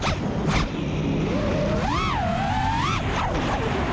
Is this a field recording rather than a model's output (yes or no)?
yes